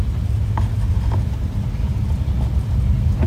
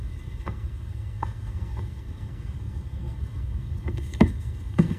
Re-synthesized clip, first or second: second